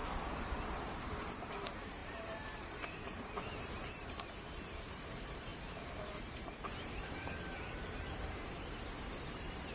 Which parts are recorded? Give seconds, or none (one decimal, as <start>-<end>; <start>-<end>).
0.0-0.7; 5.5-6.1